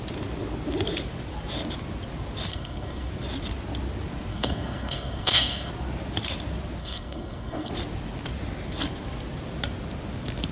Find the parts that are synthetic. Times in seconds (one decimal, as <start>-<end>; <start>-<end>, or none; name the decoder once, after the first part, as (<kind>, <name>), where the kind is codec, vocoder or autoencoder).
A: 2.5-3.1 (codec, SNAC); 4.3-5.7; 6.8-7.7